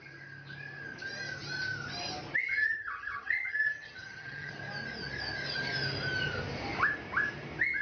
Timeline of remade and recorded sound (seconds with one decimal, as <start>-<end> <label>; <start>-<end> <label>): 0.0-2.5 recorded; 2.5-4.5 remade; 4.5-7.8 recorded